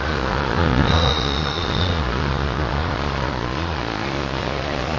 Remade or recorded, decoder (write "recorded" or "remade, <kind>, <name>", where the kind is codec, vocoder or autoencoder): remade, vocoder, Vocos